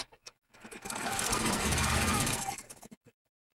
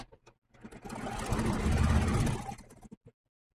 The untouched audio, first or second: second